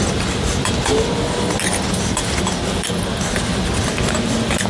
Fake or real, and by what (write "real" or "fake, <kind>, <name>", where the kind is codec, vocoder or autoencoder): real